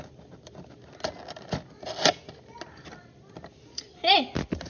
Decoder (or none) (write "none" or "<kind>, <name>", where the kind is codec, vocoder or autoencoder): none